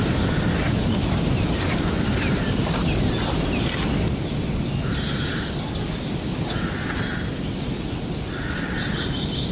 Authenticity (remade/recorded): recorded